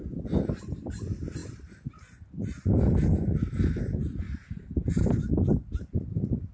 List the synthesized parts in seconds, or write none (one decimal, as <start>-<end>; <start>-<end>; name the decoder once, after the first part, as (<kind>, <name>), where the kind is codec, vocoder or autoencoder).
none